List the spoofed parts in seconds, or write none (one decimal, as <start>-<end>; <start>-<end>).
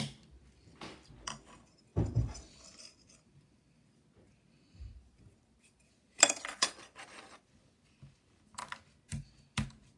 none